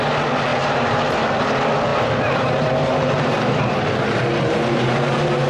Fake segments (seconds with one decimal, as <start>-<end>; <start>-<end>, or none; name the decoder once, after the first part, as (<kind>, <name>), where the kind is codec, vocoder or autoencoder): 0.5-1.2 (vocoder, BigVGAN v2); 1.9-5.5